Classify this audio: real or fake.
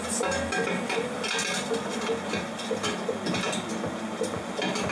real